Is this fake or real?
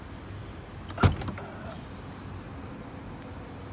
real